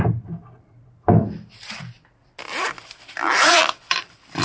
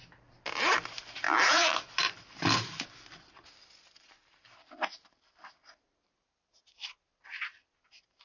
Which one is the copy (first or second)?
first